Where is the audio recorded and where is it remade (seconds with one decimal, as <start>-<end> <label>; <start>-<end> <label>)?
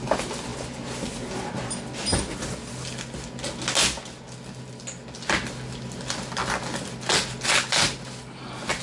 0.0-8.8 recorded